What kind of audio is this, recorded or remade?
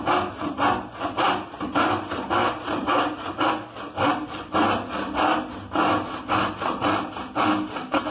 recorded